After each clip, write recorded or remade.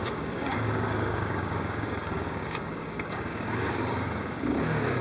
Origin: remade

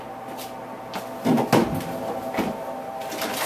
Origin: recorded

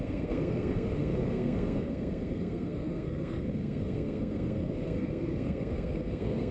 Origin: remade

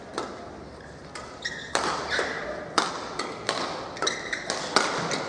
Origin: recorded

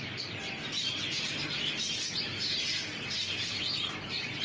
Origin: remade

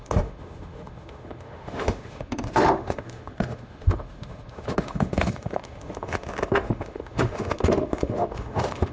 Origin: remade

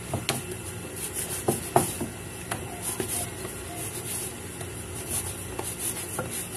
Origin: recorded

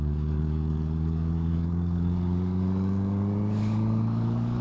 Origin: remade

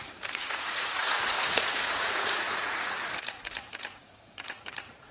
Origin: remade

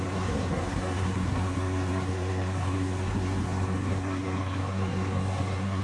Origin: remade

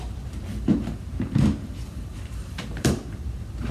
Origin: remade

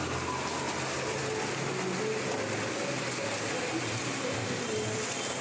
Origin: recorded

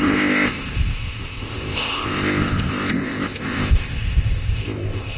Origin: remade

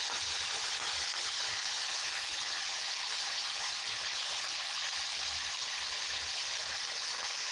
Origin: remade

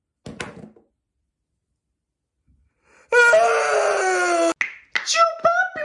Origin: recorded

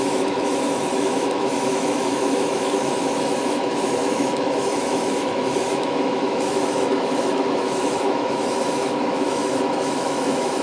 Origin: remade